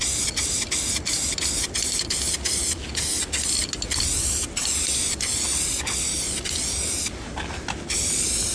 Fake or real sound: real